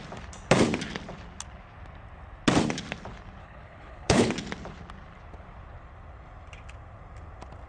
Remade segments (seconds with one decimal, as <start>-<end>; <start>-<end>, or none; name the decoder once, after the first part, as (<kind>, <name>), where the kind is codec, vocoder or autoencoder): 3.4-4.3 (codec, HILCodec)